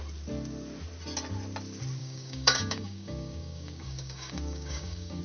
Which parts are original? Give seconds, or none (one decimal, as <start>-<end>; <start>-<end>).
0.0-2.0

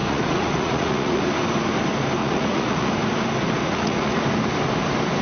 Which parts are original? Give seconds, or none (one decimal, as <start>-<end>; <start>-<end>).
1.2-2.2; 2.9-3.6; 4.2-5.2